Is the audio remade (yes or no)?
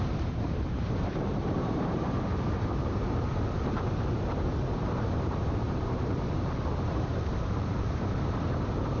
yes